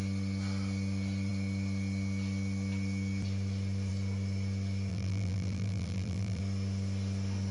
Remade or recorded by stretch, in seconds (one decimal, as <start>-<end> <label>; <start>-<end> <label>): 0.0-4.9 recorded; 4.9-6.4 remade; 6.4-7.5 recorded